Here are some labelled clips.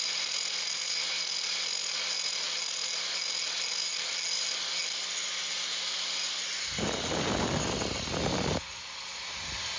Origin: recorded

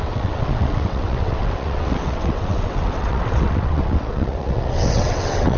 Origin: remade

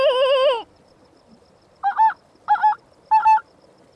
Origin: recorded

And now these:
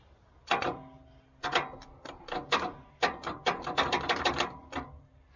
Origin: recorded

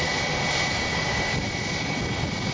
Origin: recorded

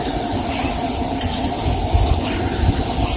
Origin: recorded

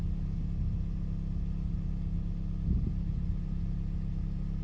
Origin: recorded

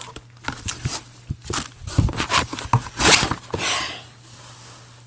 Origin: recorded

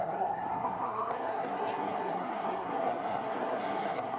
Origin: remade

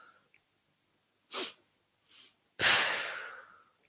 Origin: recorded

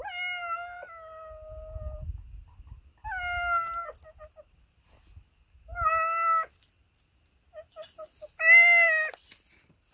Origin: recorded